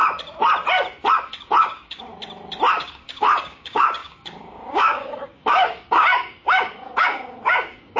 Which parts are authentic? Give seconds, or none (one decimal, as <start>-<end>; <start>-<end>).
0.0-1.2; 2.1-2.7